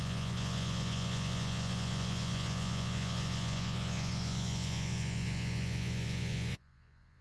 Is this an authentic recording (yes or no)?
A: no